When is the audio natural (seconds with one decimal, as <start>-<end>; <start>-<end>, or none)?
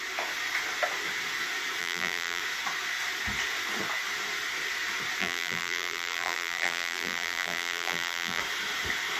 0.0-1.8; 2.4-5.2; 8.4-9.2